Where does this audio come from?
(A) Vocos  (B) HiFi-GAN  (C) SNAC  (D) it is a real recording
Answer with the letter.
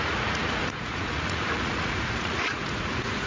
A